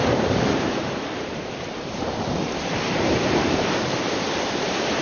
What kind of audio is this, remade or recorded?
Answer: remade